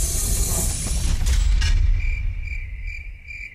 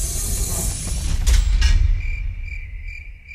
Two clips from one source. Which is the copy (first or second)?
first